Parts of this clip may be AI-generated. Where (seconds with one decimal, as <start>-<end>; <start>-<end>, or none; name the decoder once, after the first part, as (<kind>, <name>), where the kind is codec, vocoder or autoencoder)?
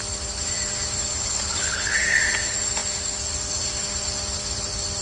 1.1-2.2 (codec, HILCodec)